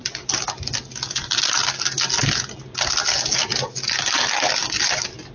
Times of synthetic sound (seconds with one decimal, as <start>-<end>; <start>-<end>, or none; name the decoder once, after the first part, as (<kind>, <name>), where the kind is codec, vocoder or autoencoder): none